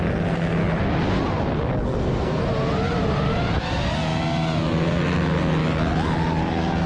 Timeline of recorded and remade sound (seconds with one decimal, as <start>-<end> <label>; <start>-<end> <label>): 0.0-0.6 remade; 0.6-1.8 recorded; 1.8-2.4 remade; 2.4-6.4 recorded; 6.4-6.9 remade